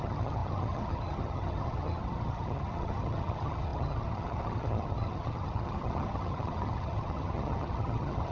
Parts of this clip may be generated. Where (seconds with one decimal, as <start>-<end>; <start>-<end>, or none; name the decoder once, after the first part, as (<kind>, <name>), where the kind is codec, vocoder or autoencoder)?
0.0-8.3 (vocoder, HiFi-GAN)

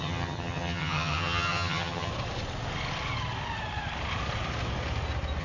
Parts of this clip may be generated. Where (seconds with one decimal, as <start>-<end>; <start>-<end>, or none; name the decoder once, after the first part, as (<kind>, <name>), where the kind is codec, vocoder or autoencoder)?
0.0-2.1 (vocoder, HiFi-GAN)